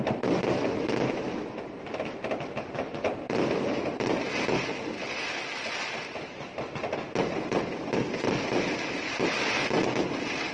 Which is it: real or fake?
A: real